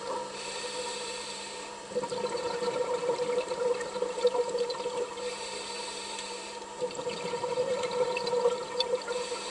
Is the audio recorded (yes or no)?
no